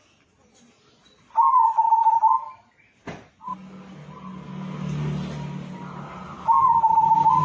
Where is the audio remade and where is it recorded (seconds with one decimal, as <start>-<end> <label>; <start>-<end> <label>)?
0.0-7.4 recorded